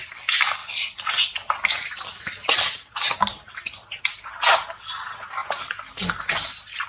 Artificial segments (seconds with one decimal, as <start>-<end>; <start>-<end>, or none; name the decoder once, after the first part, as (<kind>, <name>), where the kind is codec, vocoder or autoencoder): none